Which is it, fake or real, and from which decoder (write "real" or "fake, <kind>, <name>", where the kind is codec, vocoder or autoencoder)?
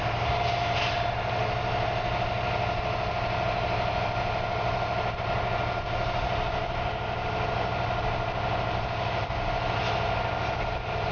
real